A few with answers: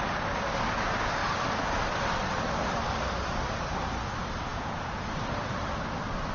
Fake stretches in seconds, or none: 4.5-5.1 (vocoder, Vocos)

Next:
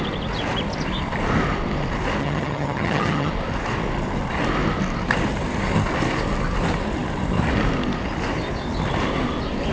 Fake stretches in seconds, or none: 2.2-3.3 (vocoder, HiFi-GAN)

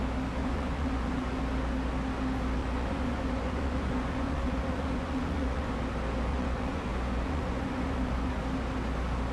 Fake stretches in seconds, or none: 0.4-1.4 (vocoder, Vocos); 2.6-5.7; 6.3-8.4